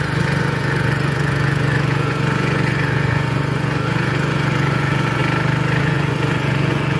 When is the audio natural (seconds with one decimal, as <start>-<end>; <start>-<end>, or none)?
5.2-5.8